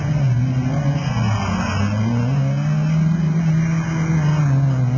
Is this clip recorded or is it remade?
recorded